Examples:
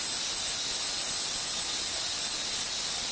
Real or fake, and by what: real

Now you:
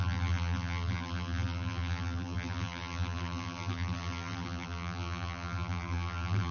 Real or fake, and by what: fake, vocoder, BigVGAN v2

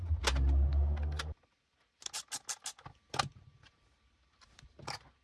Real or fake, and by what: real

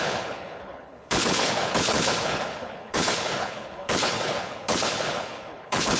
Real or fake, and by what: fake, codec, HILCodec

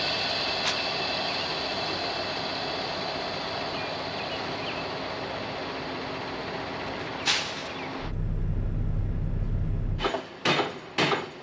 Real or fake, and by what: real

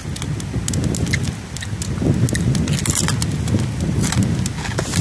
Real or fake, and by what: real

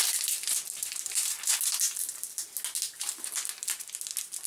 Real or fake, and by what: real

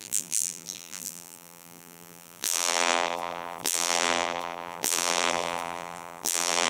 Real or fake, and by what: fake, vocoder, BigVGAN v2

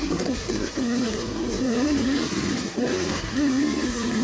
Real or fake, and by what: fake, codec, SNAC